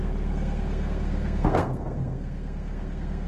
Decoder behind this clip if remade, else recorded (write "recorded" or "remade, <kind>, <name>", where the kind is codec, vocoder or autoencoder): remade, codec, SNAC